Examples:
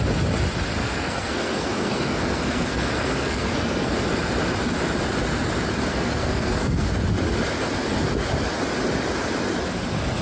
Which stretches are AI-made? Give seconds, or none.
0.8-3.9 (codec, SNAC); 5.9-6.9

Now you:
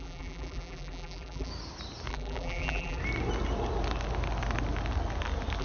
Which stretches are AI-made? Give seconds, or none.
0.0-1.5 (vocoder, BigVGAN v2); 2.1-3.0

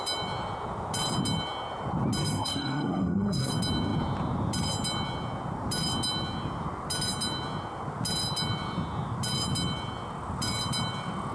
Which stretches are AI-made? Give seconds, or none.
2.2-3.5 (codec, SNAC)

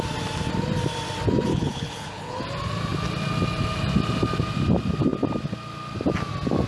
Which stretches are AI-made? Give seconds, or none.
1.5-2.4 (codec, HILCodec)

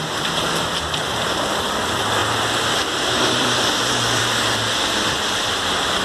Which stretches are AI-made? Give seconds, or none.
0.0-2.2 (vocoder, BigVGAN v2); 2.8-6.0